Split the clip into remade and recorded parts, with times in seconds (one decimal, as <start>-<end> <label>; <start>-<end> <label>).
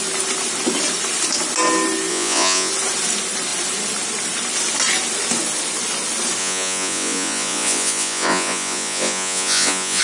0.0-2.1 recorded; 2.1-2.7 remade; 2.7-6.4 recorded; 6.4-10.0 remade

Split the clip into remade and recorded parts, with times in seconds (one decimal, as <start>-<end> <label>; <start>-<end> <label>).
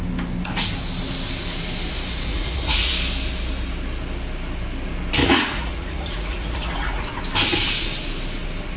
0.0-2.3 recorded; 2.3-2.9 remade; 2.9-5.2 recorded; 5.2-7.2 remade; 7.2-8.8 recorded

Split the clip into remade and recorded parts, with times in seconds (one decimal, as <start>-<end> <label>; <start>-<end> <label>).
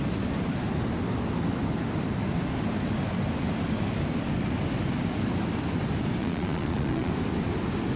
0.0-6.2 recorded; 6.2-7.1 remade; 7.1-8.0 recorded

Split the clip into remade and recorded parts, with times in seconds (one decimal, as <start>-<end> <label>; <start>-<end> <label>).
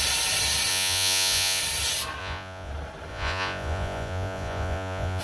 0.0-0.7 recorded; 0.7-1.6 remade; 1.6-2.2 recorded; 2.2-2.7 remade; 2.7-3.1 recorded; 3.1-5.2 remade